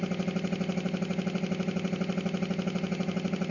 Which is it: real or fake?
real